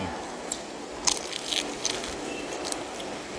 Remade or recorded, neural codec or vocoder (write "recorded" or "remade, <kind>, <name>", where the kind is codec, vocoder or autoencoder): recorded